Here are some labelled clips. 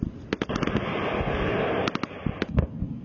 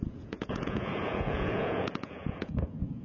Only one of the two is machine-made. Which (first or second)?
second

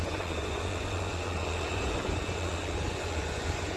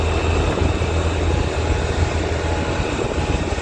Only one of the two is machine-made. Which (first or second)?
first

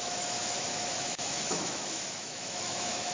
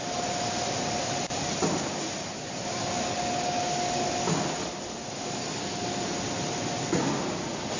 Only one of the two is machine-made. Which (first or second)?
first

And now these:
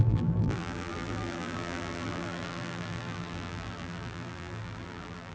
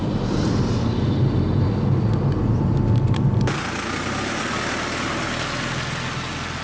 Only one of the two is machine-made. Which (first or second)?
first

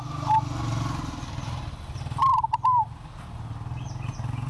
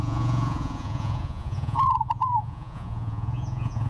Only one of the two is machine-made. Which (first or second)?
second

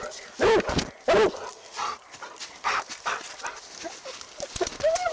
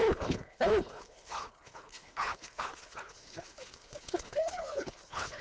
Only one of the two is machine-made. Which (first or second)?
second